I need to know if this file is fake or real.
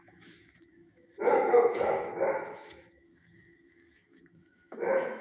fake